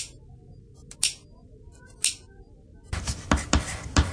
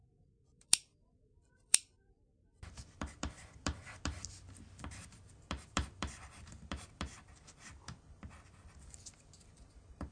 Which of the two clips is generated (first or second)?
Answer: second